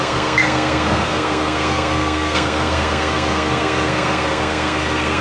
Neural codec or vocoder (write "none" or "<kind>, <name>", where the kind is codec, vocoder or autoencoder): codec, SNAC